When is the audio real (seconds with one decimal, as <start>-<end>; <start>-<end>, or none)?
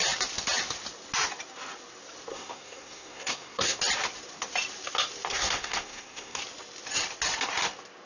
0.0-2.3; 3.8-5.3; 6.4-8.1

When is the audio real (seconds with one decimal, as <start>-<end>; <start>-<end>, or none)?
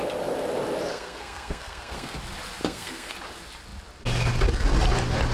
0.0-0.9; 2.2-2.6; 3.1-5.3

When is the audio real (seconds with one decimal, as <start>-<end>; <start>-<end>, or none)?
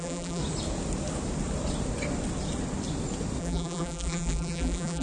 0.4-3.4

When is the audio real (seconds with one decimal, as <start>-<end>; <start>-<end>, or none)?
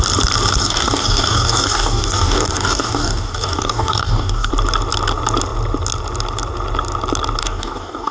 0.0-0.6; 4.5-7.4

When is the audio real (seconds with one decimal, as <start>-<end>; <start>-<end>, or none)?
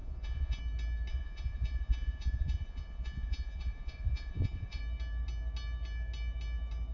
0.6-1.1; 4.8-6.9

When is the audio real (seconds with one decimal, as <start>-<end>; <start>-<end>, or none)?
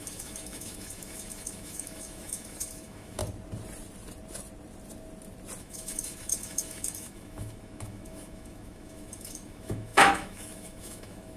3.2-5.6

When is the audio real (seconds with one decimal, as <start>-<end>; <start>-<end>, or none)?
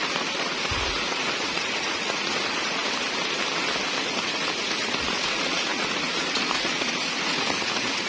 2.8-4.0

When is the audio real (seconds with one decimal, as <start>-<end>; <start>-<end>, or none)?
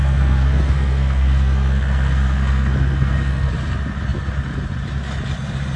3.5-5.8